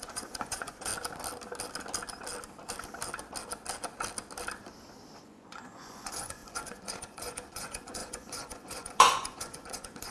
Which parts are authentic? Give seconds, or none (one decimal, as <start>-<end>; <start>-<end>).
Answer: 0.9-5.2